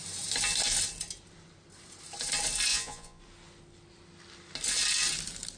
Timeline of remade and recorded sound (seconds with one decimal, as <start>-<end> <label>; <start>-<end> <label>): 0.0-2.7 recorded; 2.7-3.2 remade; 3.2-5.6 recorded